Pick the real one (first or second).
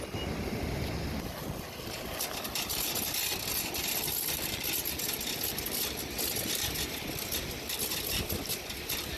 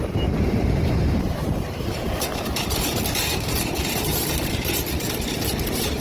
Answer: first